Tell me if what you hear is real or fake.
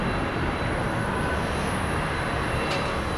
real